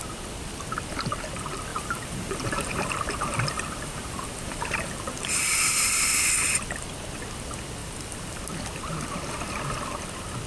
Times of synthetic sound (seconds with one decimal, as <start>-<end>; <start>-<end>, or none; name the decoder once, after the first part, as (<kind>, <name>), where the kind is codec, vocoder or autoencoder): 1.7-5.5 (vocoder, BigVGAN v2); 7.8-8.4